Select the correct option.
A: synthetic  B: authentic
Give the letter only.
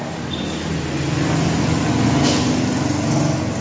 B